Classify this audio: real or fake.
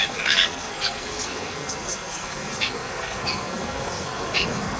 fake